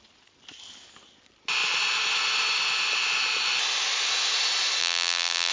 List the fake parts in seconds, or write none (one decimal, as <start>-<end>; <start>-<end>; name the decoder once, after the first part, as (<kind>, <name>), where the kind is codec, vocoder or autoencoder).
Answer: 4.8-5.5 (vocoder, BigVGAN v2)